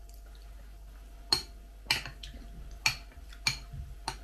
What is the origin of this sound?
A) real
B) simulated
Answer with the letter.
A